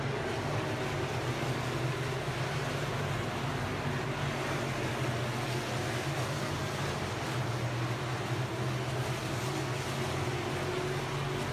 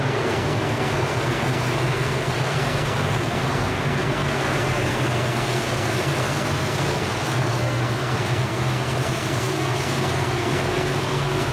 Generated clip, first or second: second